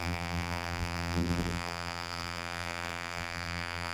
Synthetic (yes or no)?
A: yes